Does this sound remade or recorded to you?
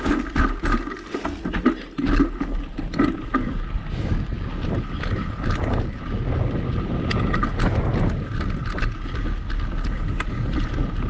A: recorded